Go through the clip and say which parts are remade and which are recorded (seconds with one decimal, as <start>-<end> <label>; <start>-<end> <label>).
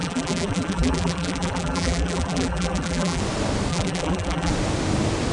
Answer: 0.0-3.2 remade; 3.2-3.7 recorded; 3.7-4.5 remade; 4.5-5.3 recorded